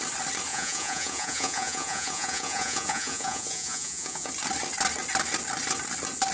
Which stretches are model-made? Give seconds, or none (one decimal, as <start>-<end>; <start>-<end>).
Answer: 0.5-4.3